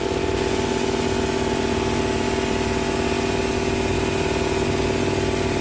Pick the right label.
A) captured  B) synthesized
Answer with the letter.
A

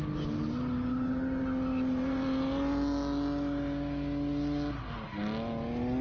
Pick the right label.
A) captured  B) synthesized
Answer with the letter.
A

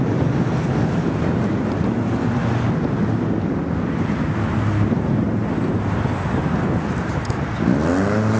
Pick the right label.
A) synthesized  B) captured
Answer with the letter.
B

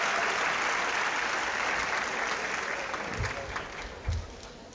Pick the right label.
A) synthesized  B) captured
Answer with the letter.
B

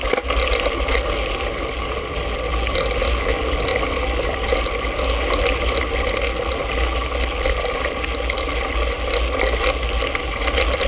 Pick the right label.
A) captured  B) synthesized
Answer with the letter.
A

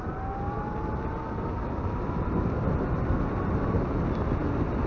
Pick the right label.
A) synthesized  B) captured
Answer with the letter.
B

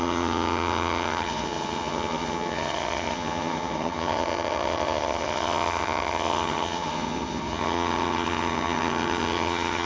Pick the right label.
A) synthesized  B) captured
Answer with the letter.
A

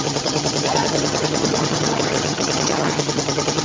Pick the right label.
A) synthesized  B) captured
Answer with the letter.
A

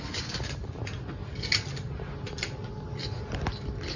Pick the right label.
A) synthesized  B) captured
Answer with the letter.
B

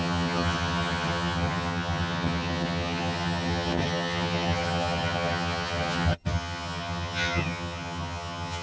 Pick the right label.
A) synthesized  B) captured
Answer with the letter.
A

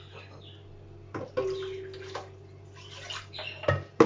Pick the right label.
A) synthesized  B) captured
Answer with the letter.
B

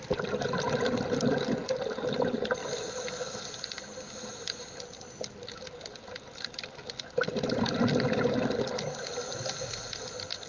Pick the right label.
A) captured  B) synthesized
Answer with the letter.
A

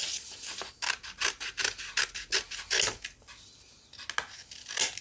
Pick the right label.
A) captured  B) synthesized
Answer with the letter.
A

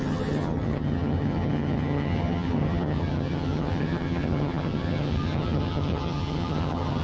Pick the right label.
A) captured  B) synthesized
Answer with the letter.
B